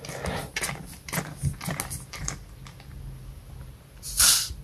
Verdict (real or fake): real